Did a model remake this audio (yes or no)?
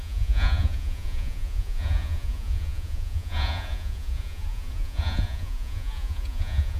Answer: yes